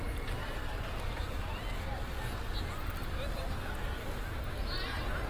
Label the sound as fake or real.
real